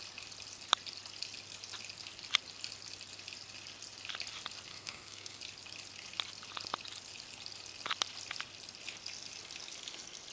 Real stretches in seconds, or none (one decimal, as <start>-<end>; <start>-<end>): 0.0-4.7; 5.4-10.3